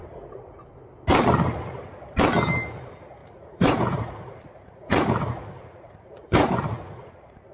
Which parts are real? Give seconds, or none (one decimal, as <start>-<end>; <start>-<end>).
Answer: 0.0-3.2; 7.1-7.5